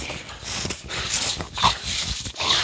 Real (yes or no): no